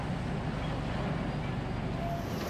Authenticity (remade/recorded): recorded